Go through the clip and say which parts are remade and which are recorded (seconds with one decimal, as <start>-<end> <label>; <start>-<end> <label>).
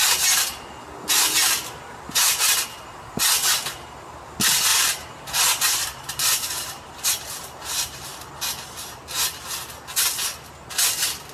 0.0-4.7 recorded; 4.7-8.3 remade; 8.3-11.3 recorded